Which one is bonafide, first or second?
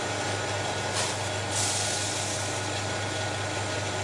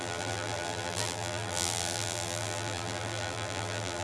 first